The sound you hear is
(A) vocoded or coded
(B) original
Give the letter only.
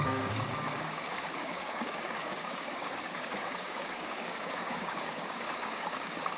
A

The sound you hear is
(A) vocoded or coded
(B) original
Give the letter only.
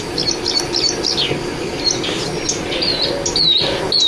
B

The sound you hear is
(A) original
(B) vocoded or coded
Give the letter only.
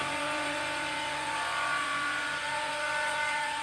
B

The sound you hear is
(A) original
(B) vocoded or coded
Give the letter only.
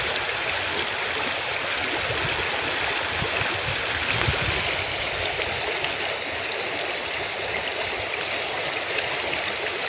A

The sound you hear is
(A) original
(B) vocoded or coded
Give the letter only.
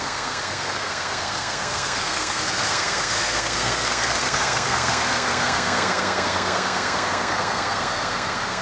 B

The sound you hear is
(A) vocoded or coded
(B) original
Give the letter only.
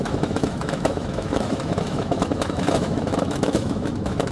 A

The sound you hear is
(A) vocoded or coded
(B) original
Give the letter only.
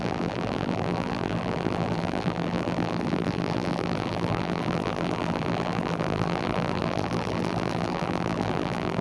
A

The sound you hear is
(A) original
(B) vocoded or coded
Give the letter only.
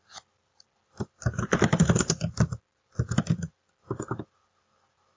A